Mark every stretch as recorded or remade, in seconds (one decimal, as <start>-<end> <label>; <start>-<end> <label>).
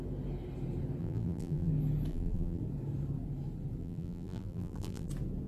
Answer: 0.0-1.0 recorded; 1.0-1.7 remade; 1.7-2.1 recorded; 2.1-2.6 remade; 2.6-3.8 recorded; 3.8-5.1 remade; 5.1-5.5 recorded